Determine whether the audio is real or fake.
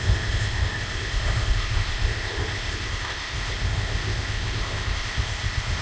fake